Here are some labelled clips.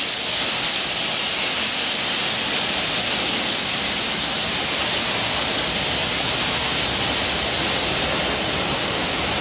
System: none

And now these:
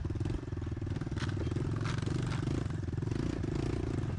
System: none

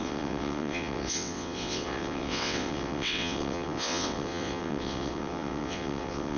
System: vocoder, WaveNeXt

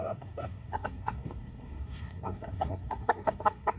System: codec, SNAC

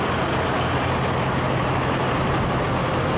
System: none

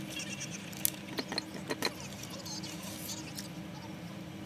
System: none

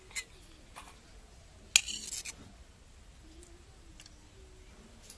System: none